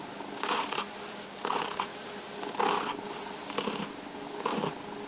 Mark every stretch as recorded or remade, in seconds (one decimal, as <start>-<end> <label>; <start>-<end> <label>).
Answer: 0.0-5.1 recorded